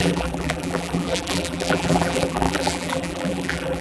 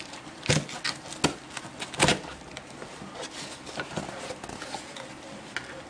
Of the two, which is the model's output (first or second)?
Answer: first